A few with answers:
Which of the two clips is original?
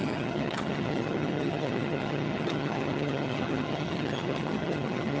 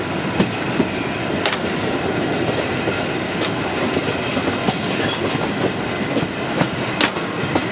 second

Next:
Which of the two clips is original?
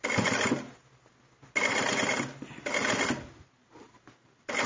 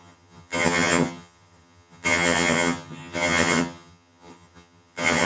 first